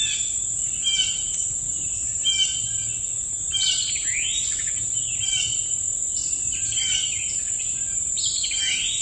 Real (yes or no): yes